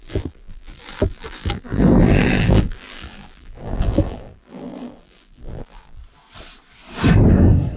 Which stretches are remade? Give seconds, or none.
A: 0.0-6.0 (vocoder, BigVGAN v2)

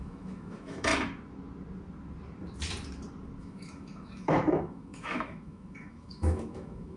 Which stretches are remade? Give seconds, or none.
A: 0.0-0.9 (autoencoder, DAC-VAE); 3.4-7.0

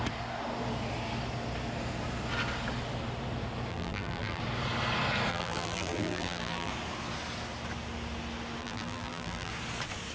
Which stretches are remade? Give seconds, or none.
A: 3.7-4.4 (vocoder, BigVGAN v2); 5.3-6.7; 8.6-9.5

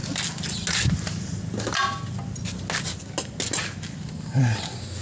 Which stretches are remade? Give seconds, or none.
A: none

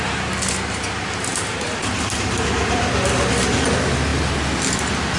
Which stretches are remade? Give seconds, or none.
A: none

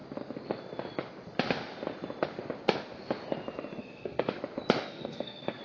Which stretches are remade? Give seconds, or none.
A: 3.8-4.3 (codec, SNAC); 4.9-5.6

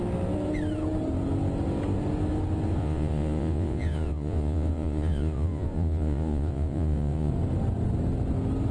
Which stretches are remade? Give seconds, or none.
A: 2.8-7.3 (vocoder, Vocos)

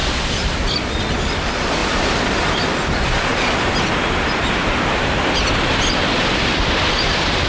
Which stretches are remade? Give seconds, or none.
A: 3.3-6.3 (vocoder, BigVGAN v2)